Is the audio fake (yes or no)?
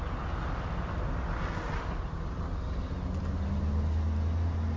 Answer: no